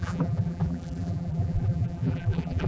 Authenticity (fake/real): fake